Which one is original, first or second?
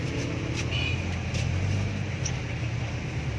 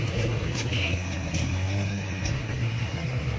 first